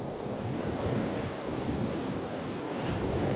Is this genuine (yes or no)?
no